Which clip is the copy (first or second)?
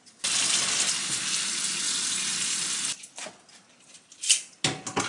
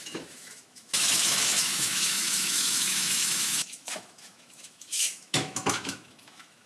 second